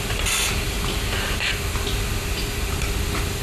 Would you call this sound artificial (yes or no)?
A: no